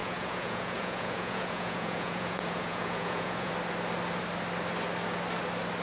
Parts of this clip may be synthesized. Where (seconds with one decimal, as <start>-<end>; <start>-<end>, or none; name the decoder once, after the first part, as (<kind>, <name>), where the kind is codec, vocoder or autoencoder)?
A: 0.0-3.5 (vocoder, Vocos)